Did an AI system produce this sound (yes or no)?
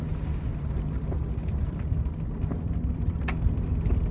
no